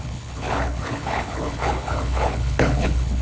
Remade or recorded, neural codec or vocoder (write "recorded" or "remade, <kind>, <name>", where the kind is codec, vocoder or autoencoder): remade, codec, HILCodec